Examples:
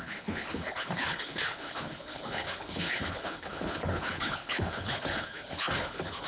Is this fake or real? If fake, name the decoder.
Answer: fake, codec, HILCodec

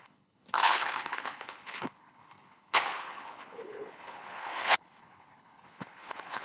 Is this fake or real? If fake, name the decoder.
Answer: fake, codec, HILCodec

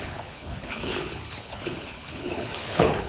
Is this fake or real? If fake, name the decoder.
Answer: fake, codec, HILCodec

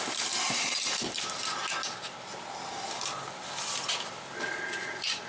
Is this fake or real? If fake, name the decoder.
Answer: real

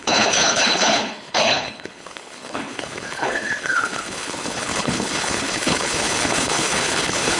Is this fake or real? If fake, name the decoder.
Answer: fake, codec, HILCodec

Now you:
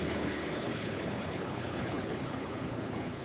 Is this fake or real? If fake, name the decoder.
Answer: fake, codec, HILCodec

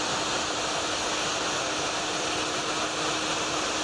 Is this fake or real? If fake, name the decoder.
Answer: real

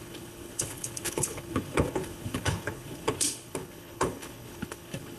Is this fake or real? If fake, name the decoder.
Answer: fake, codec, HILCodec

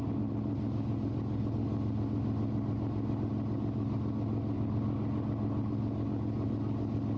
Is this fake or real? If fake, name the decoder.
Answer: real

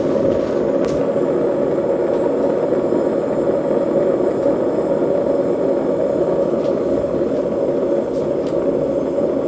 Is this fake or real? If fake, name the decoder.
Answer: real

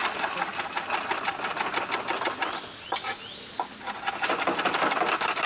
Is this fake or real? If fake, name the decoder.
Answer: real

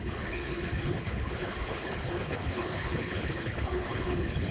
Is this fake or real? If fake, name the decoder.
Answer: fake, codec, HILCodec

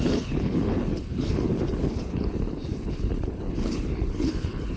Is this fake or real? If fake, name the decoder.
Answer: fake, codec, HILCodec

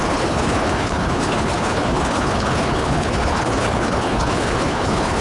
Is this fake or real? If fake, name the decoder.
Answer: fake, codec, HILCodec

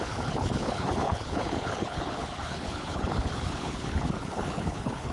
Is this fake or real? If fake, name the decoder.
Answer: fake, codec, HILCodec